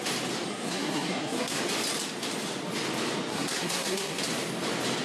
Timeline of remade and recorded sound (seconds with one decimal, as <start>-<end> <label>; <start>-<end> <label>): 0.0-0.5 recorded; 0.5-1.6 remade; 1.6-3.3 recorded; 3.3-4.2 remade; 4.2-5.0 recorded